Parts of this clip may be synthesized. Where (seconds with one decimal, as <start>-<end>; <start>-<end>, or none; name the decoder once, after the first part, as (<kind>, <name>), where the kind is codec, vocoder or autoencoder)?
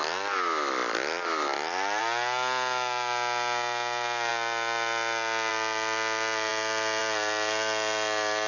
none